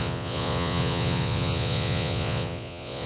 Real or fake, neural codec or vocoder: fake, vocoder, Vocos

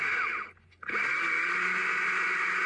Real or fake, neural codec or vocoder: real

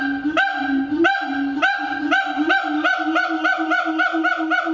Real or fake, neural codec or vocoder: real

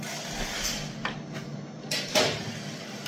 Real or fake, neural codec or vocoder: real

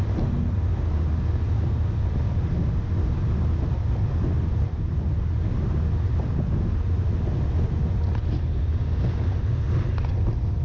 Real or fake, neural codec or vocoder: real